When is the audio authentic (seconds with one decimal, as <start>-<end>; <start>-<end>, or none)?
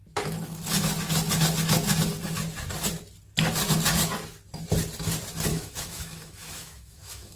0.0-5.5